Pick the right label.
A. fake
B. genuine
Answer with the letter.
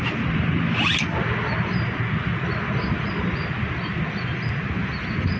B